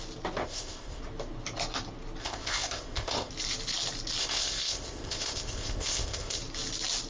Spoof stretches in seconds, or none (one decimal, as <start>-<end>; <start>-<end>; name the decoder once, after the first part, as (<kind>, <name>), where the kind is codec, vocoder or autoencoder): 0.4-1.0 (codec, ZipCodec); 2.2-3.3; 4.2-6.4